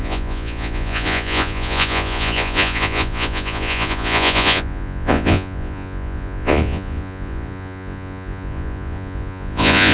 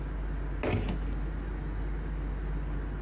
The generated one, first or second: first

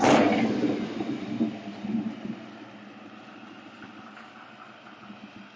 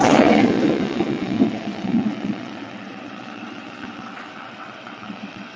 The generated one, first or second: second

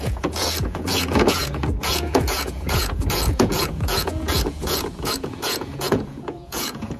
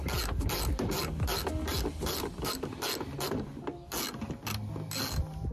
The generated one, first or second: first